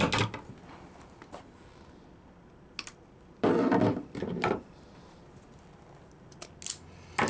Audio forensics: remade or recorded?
recorded